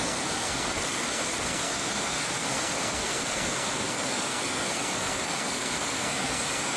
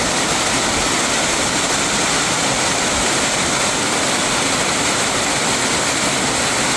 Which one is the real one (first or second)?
second